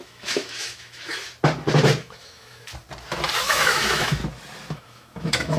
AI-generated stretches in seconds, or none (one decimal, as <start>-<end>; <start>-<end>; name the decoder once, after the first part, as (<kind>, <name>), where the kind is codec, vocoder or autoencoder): 0.0-1.1 (autoencoder, DAC-VAE); 2.0-2.7; 3.4-4.2; 4.7-5.6